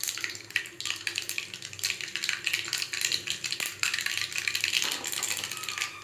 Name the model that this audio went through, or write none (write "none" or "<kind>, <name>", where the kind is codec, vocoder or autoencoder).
none